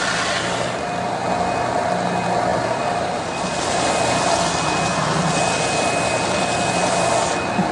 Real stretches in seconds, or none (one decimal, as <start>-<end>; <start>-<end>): 0.0-2.5; 3.9-7.7